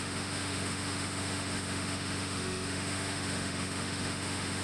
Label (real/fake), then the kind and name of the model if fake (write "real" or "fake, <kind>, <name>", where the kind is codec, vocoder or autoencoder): fake, autoencoder, DAC-VAE